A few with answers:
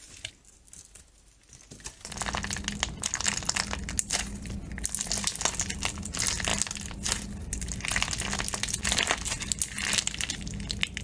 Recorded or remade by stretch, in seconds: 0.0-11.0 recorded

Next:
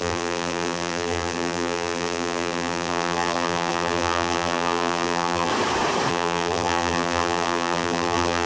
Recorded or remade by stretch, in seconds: 0.0-5.5 remade; 5.5-6.1 recorded; 6.1-8.5 remade